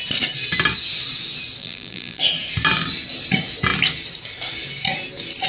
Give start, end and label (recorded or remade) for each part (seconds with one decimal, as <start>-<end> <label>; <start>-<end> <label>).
0.0-1.6 recorded; 1.6-2.2 remade; 2.2-5.5 recorded